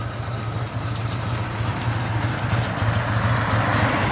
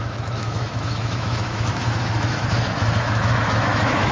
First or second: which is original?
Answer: first